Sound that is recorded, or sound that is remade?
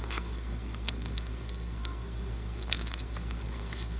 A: remade